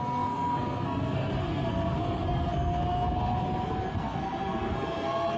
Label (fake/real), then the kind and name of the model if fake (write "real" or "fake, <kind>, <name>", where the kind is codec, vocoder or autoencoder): fake, codec, SNAC